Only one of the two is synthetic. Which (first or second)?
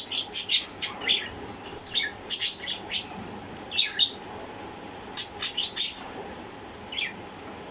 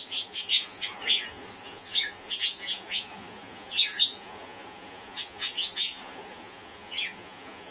second